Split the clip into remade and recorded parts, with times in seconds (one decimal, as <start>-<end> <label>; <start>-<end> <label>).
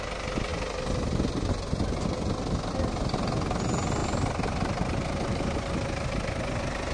0.0-6.9 recorded